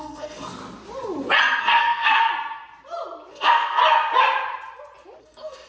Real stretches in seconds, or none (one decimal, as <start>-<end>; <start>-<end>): 0.6-1.6; 2.3-3.3; 3.8-5.2